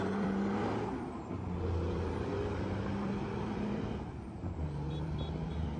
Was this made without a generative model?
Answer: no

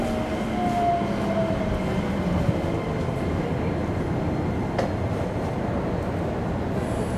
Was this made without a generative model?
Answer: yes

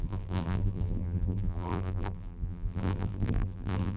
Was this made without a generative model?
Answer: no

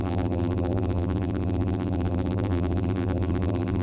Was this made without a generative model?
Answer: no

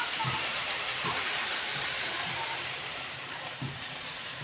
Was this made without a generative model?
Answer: no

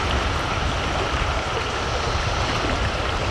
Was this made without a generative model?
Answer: yes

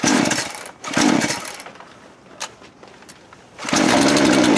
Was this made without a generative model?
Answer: no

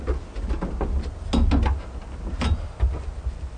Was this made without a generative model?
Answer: yes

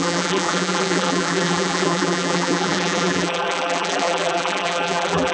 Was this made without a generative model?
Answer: no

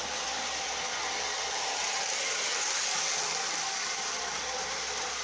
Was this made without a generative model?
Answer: no